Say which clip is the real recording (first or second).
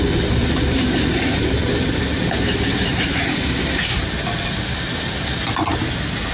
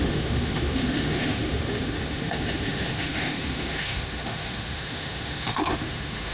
first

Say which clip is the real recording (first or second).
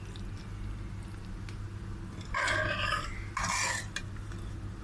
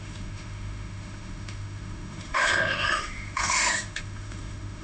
first